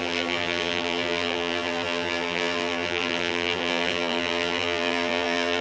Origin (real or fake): fake